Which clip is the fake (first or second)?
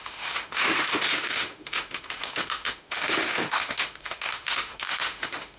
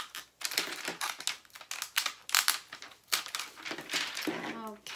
first